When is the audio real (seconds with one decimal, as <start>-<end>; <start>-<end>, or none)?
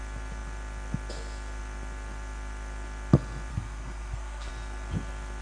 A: 0.0-3.5; 4.5-5.4